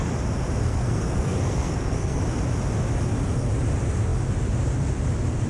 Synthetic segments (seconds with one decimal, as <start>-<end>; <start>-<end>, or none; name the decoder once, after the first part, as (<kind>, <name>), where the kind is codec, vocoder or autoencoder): 0.6-2.2 (codec, SNAC)

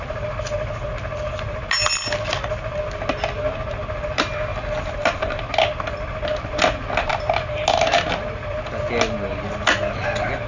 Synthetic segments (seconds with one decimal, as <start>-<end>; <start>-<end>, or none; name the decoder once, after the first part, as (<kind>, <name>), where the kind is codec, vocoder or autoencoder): none